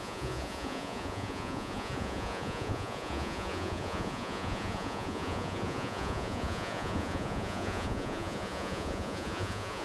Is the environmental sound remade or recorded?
remade